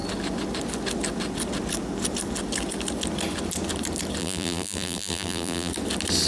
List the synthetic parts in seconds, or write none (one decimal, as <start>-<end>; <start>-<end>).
4.2-5.7